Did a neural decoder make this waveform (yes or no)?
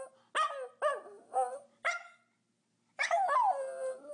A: no